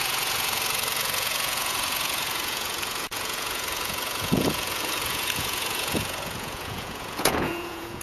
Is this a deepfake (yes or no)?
yes